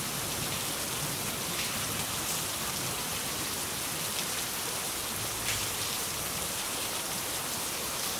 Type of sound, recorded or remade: remade